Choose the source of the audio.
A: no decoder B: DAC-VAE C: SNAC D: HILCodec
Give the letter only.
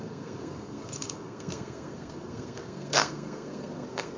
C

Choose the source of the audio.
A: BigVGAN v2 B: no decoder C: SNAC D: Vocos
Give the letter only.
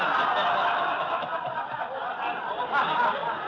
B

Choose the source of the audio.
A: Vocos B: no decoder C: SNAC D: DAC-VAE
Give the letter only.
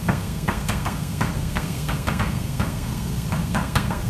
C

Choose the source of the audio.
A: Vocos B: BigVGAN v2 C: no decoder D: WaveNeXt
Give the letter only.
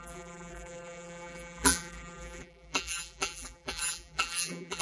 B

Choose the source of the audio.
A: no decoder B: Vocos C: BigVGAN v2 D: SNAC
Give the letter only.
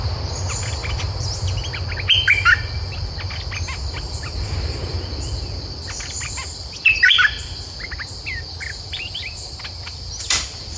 C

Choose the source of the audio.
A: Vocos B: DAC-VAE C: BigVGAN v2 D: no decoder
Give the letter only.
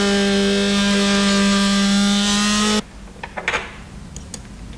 D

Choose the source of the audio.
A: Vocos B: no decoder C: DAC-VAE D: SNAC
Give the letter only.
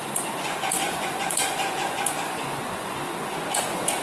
A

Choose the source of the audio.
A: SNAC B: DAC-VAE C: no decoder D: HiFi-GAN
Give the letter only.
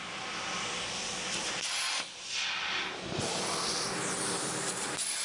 C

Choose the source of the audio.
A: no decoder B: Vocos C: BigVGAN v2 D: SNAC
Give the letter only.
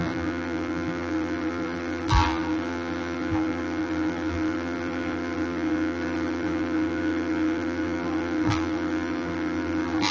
C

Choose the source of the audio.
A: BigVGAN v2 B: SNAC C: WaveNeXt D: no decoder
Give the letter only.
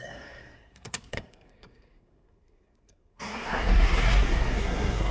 B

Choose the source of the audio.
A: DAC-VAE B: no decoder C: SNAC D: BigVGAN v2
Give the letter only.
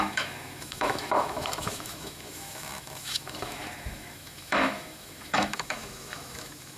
A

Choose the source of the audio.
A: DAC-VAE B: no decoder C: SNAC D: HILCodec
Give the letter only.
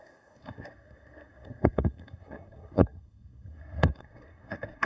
C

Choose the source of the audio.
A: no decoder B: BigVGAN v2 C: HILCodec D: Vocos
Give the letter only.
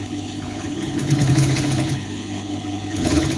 C